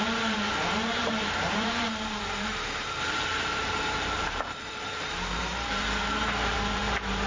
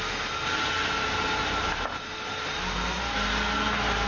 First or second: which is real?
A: second